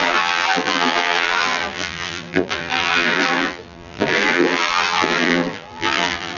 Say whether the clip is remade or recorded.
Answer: remade